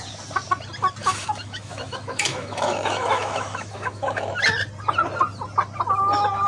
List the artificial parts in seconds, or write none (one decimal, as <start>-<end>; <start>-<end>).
1.0-4.3